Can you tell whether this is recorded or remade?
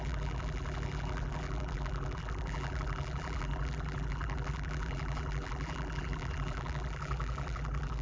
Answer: remade